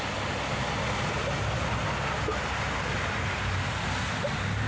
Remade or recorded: recorded